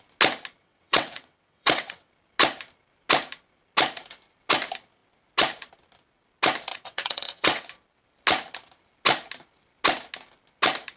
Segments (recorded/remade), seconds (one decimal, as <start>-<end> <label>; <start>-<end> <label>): 0.0-0.6 recorded; 0.6-2.1 remade; 2.1-6.7 recorded; 6.7-7.7 remade; 7.7-11.0 recorded